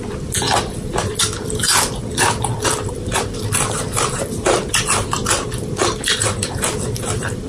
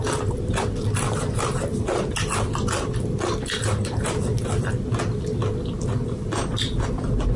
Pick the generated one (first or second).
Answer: first